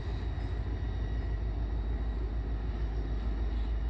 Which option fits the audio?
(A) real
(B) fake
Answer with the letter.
A